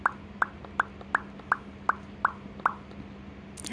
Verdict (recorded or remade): recorded